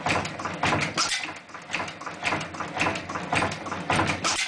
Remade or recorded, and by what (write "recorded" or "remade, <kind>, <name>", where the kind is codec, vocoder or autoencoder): recorded